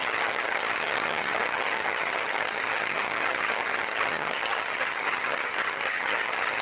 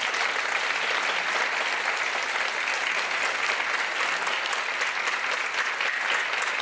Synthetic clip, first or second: first